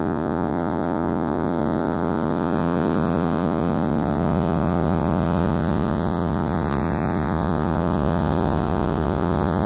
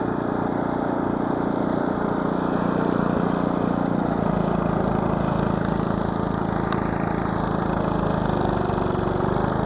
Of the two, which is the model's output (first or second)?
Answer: first